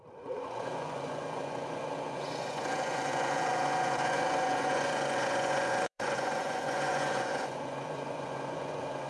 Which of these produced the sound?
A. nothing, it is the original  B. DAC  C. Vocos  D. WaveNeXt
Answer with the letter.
C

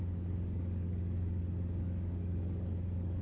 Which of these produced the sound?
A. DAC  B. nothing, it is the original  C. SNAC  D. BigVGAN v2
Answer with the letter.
A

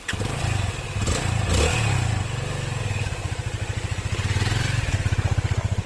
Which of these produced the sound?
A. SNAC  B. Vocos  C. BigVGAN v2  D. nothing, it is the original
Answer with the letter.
D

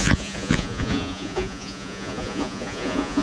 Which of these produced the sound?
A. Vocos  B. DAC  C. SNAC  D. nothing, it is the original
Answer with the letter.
A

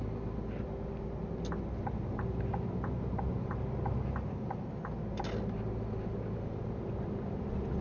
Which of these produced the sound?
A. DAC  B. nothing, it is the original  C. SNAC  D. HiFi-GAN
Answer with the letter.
B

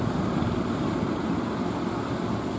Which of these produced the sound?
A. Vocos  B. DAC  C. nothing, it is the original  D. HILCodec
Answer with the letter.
C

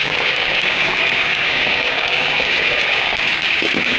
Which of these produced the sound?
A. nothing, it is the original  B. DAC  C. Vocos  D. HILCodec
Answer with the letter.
B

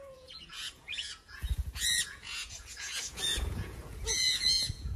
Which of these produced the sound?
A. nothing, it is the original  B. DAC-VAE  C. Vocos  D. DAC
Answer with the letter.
C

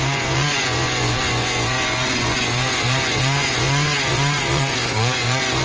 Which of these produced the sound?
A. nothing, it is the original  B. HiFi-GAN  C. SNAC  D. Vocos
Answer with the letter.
D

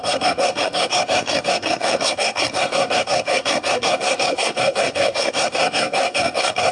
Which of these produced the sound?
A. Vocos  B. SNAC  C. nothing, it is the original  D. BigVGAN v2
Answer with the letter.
B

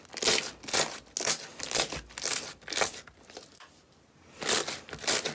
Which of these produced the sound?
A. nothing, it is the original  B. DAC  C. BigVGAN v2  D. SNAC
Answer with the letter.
A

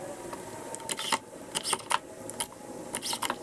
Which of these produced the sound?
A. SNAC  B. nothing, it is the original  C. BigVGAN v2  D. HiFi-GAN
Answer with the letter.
B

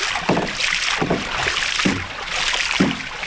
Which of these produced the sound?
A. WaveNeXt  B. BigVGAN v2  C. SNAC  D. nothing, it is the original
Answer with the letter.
D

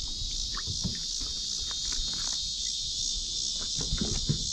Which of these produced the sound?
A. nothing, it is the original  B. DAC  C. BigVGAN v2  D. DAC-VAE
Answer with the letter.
A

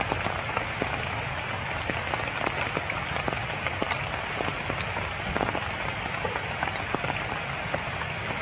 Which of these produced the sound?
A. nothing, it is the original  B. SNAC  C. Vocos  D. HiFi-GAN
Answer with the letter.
A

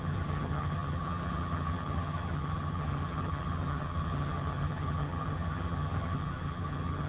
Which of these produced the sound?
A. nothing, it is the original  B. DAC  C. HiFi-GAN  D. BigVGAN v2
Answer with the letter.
C